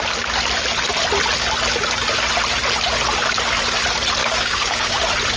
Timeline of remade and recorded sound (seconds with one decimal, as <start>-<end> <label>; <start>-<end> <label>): 0.0-4.2 recorded; 4.2-5.0 remade; 5.0-5.4 recorded